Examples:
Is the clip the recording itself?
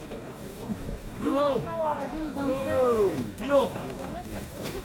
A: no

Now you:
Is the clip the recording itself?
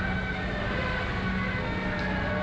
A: yes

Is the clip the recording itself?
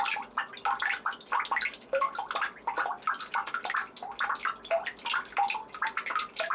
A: yes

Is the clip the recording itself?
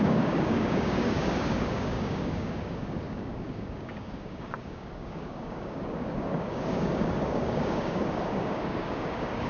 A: no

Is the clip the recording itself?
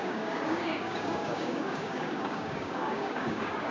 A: no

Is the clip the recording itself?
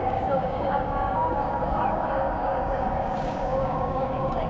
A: no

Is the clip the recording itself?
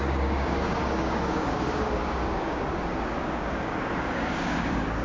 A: no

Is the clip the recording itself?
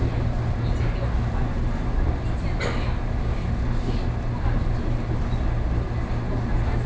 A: yes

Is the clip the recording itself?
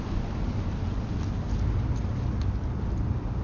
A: yes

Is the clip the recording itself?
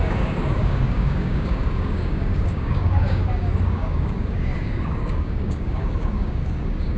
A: no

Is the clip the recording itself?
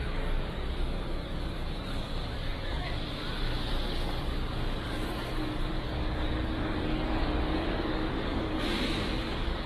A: no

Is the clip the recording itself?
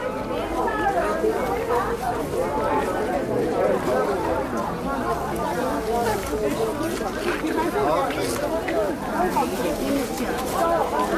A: yes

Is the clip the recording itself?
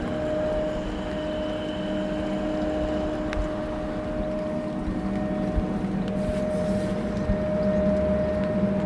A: yes